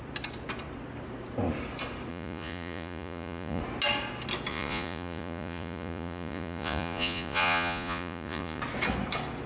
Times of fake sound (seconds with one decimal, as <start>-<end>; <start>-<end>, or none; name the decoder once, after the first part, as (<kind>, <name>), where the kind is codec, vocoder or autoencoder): 2.1-3.6 (vocoder, Vocos); 4.5-8.6